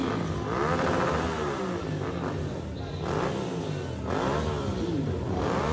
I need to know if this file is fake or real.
real